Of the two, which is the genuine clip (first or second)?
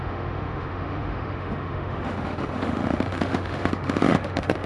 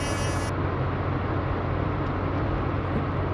second